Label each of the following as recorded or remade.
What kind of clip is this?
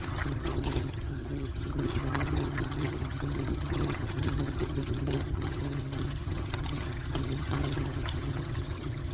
remade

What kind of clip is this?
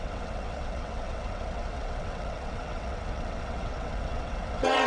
remade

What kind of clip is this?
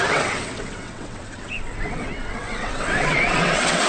remade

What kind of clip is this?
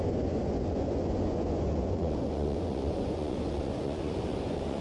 remade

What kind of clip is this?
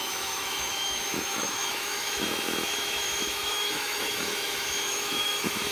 remade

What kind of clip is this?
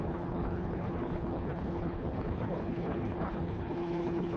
remade